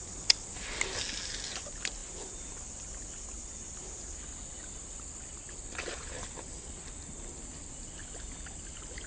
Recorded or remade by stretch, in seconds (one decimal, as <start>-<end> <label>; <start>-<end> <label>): 0.0-9.1 recorded

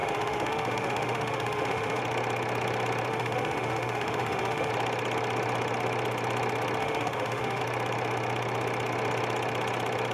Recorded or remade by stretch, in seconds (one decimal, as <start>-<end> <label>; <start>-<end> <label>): 0.0-2.0 remade; 2.0-3.1 recorded; 3.1-4.7 remade; 4.7-6.8 recorded; 6.8-7.6 remade; 7.6-10.1 recorded

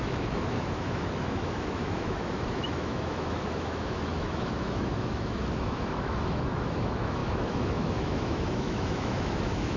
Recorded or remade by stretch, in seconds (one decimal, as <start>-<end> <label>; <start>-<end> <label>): 0.0-9.8 remade

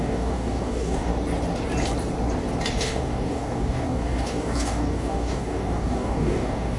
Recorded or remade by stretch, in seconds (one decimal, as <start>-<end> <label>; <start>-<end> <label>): 0.0-1.1 remade; 1.1-2.7 recorded; 2.7-6.8 remade

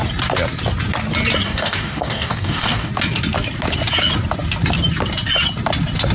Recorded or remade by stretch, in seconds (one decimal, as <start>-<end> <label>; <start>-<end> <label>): 0.0-1.4 recorded; 1.4-2.9 remade; 2.9-6.1 recorded